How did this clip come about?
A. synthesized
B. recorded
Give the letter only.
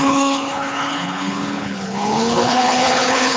A